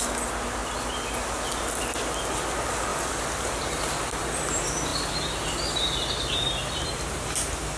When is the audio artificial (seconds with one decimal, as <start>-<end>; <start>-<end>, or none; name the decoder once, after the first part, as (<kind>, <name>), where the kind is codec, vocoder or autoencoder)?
2.9-3.5 (vocoder, BigVGAN v2)